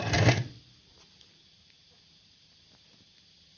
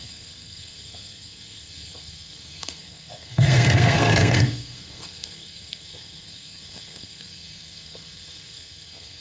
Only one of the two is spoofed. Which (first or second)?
second